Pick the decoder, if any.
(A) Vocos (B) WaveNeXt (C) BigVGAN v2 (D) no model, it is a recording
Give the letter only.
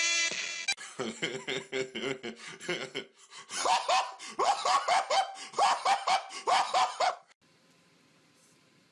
D